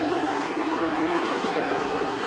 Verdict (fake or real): fake